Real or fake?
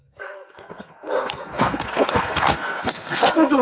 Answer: fake